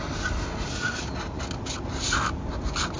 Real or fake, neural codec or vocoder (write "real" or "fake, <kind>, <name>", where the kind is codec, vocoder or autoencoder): real